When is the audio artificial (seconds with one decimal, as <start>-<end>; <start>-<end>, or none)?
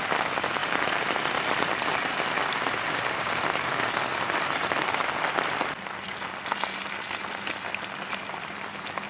none